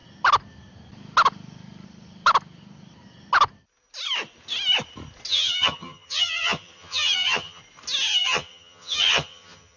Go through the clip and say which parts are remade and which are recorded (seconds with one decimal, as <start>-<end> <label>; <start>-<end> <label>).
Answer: 0.0-5.3 recorded; 5.3-7.6 remade; 7.6-8.1 recorded; 8.1-9.8 remade